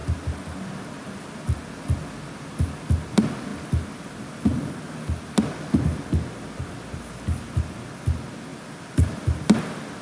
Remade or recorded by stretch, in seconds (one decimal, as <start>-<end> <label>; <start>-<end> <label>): 0.0-8.5 recorded; 8.5-9.2 remade; 9.2-10.0 recorded